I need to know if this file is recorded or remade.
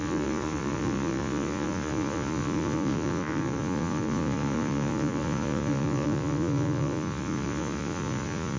remade